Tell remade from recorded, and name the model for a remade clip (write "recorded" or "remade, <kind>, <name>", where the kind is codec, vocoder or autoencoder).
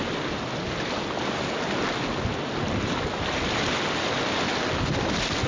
recorded